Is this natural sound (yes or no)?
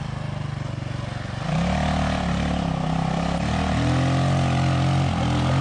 yes